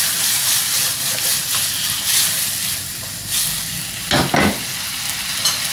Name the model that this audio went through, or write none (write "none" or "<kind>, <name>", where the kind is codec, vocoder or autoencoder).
none